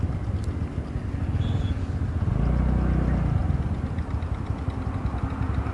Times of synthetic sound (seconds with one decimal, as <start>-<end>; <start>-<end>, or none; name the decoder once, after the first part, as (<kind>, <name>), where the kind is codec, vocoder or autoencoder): none